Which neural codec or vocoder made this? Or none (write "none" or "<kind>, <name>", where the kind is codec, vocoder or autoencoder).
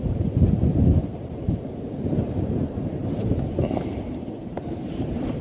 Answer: vocoder, BigVGAN v2